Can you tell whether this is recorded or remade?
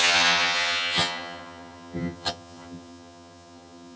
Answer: remade